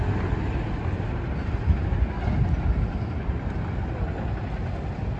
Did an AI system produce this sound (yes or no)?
no